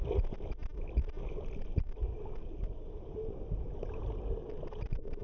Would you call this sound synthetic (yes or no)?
no